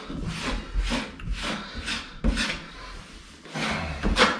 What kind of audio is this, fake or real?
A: real